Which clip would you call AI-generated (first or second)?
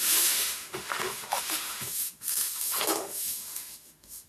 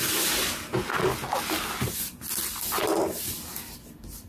first